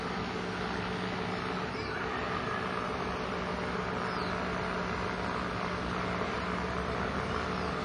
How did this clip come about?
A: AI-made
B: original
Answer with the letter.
B